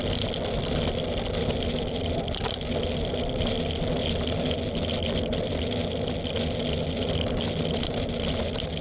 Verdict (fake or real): real